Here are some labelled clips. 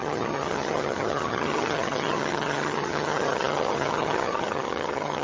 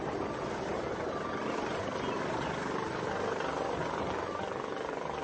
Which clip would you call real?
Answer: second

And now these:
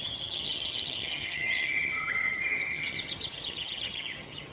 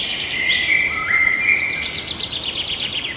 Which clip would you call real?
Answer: second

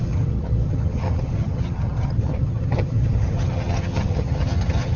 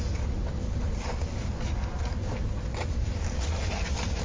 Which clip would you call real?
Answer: second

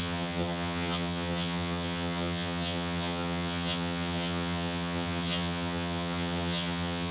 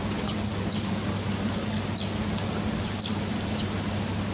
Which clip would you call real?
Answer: second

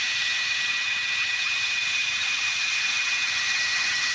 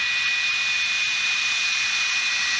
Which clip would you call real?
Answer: second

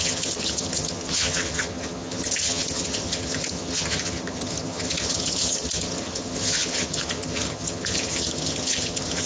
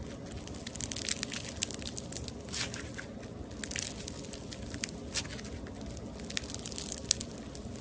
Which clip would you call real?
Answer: second